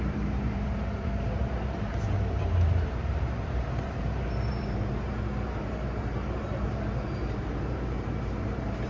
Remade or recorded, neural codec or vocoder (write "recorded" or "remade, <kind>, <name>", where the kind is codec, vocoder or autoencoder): remade, vocoder, BigVGAN v2